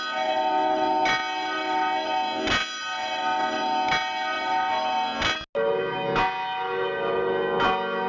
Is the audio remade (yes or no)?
no